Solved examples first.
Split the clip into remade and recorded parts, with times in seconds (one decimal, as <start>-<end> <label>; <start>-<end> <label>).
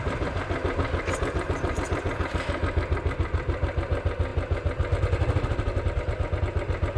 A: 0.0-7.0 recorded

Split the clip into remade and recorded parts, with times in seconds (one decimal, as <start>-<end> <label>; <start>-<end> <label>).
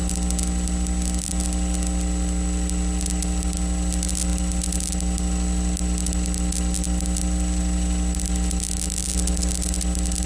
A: 0.0-10.3 recorded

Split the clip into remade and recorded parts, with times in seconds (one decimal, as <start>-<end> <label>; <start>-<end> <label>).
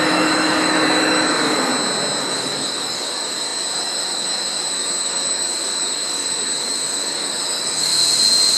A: 0.0-1.7 remade; 1.7-2.2 recorded; 2.2-7.9 remade; 7.9-8.6 recorded